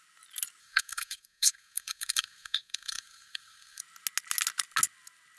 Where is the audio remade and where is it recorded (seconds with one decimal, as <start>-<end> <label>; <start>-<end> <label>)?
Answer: 0.0-0.6 recorded; 0.6-3.8 remade; 3.8-5.4 recorded